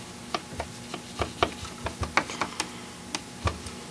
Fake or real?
real